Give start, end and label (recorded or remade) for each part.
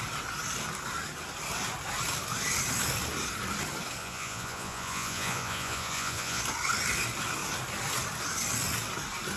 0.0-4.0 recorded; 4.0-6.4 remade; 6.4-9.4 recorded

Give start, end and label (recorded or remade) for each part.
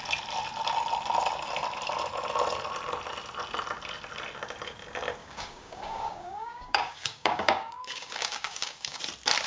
0.0-5.2 recorded; 5.2-9.0 remade; 9.0-9.5 recorded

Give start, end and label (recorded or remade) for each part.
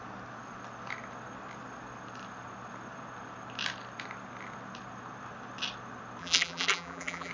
0.0-6.2 recorded; 6.2-7.3 remade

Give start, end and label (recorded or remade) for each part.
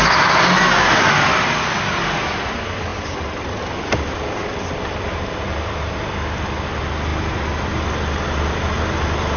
0.0-9.4 recorded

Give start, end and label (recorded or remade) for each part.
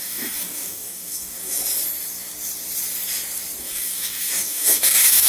0.0-1.6 remade; 1.6-3.6 recorded; 3.6-5.3 remade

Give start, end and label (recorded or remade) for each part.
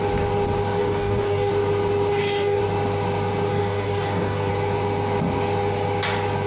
0.0-0.8 recorded; 0.8-1.5 remade; 1.5-2.1 recorded; 2.1-2.6 remade; 2.6-3.5 recorded; 3.5-4.5 remade; 4.5-6.5 recorded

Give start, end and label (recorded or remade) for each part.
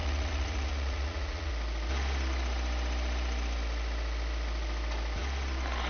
0.0-1.5 remade; 1.5-5.9 recorded